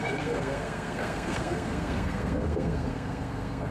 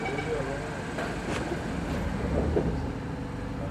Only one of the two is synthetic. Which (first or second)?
first